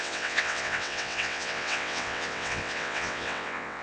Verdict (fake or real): fake